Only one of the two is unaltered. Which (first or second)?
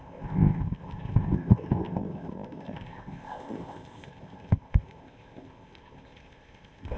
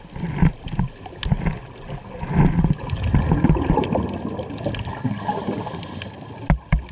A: second